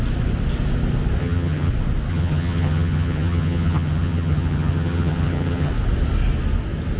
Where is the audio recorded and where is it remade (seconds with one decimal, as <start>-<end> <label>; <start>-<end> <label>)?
0.0-1.2 recorded; 1.2-1.7 remade; 1.7-2.1 recorded; 2.1-5.7 remade; 5.7-7.0 recorded